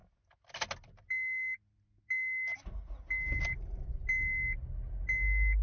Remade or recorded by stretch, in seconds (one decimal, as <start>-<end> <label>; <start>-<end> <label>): 0.0-5.6 recorded

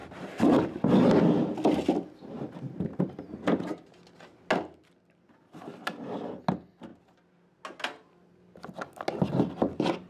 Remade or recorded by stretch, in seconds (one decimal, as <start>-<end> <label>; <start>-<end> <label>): 0.0-0.7 remade; 0.7-2.9 recorded; 2.9-3.6 remade; 3.6-10.1 recorded